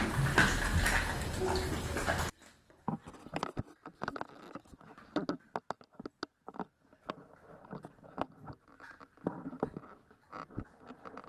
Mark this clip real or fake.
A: real